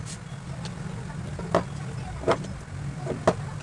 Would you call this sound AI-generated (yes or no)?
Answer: no